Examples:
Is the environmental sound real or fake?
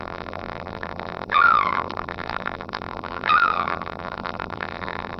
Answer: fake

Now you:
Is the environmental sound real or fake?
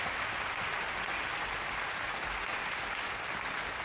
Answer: real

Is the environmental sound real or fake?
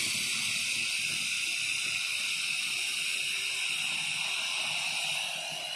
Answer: real